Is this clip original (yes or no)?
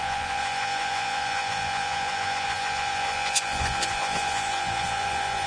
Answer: no